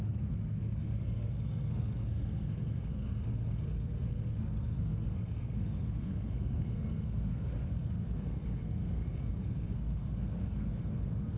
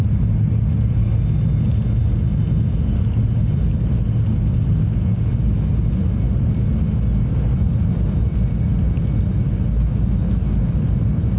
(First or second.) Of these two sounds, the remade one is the first